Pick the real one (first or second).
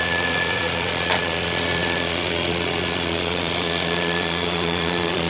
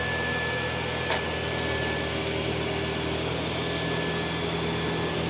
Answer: second